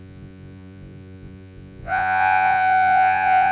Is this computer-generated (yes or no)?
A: yes